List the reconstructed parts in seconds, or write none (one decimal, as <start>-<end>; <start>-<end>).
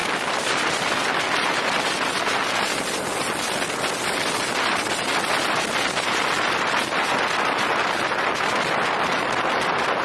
none